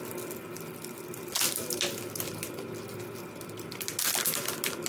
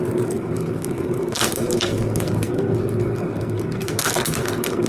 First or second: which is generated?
second